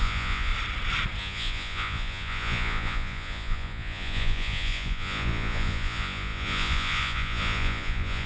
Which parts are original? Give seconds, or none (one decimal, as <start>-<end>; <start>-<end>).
0.5-1.2